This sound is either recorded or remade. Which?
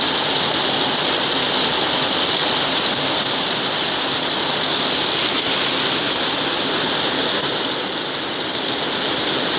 recorded